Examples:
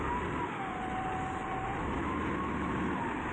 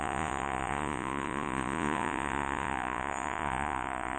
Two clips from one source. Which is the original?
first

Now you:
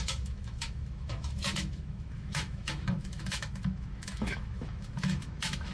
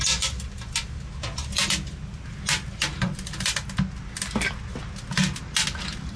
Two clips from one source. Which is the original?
second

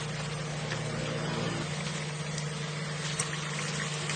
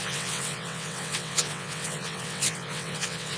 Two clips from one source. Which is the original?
first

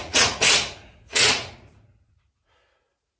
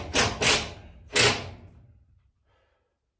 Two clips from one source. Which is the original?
second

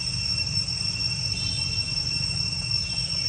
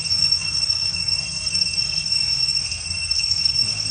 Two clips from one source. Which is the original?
first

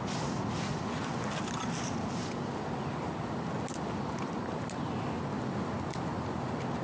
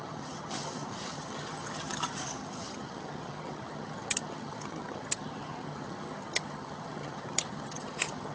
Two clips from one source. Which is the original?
first